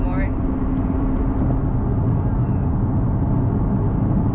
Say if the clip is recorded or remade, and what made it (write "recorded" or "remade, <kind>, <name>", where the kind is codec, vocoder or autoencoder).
recorded